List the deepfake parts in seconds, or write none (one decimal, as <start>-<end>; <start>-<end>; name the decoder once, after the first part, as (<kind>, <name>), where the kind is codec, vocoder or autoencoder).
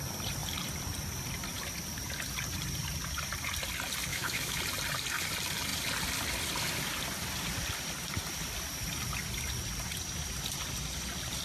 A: 4.1-4.6 (autoencoder, DAC-VAE)